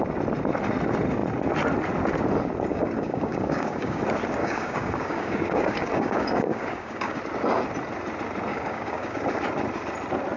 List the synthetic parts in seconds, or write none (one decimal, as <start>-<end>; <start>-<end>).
2.7-4.0; 4.4-7.2; 8.5-9.2